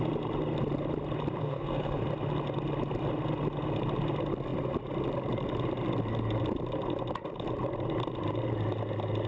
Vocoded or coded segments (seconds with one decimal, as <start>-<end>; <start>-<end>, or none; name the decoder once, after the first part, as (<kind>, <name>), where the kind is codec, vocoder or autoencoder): 1.4-2.0 (codec, SNAC)

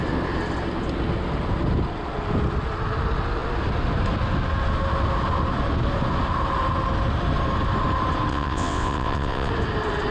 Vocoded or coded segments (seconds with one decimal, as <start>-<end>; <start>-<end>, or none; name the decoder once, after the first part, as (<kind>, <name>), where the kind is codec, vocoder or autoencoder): 8.3-9.5 (vocoder, WaveNeXt)

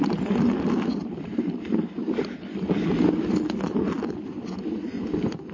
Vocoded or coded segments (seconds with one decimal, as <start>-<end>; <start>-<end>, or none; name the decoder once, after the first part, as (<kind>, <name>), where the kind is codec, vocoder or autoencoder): none

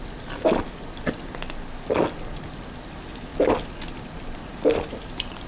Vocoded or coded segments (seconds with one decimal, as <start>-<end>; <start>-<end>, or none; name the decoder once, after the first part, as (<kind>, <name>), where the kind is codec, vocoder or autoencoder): none

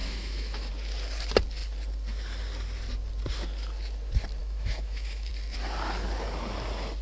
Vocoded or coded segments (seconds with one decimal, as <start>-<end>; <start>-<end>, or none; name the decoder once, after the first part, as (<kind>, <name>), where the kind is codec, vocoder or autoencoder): 0.0-0.7 (autoencoder, DAC-VAE); 4.4-5.3

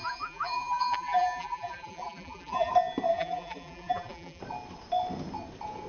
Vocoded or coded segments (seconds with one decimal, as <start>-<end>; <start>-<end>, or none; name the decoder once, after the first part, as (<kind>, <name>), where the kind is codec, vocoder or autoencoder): 0.0-2.7 (vocoder, BigVGAN v2); 3.1-4.4